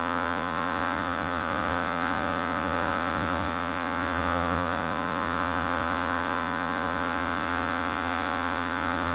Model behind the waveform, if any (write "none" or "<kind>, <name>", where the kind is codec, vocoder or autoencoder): vocoder, Vocos